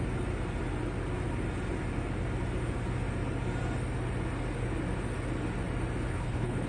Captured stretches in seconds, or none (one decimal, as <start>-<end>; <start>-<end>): 0.0-6.1